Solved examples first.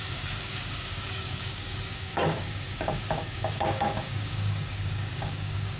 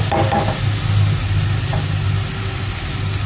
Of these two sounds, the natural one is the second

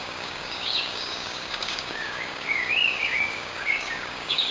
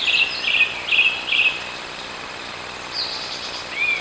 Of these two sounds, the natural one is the second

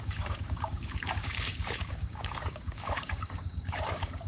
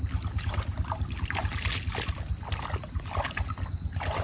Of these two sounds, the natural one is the second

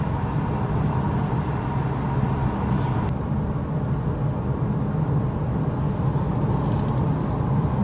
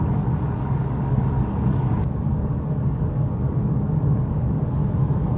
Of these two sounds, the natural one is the first